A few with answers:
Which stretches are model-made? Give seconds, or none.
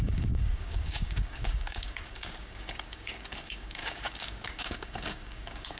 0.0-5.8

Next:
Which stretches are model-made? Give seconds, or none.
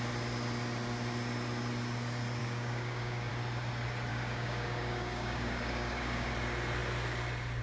2.4-3.3; 4.1-6.3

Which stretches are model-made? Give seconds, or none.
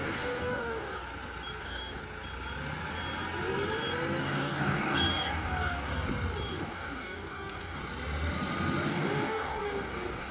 0.0-1.0; 1.6-2.0; 4.2-5.9; 6.5-7.8; 8.9-10.3